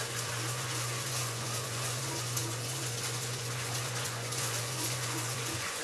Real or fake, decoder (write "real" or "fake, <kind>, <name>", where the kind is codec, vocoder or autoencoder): fake, vocoder, Vocos